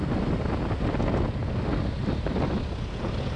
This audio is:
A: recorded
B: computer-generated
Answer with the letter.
A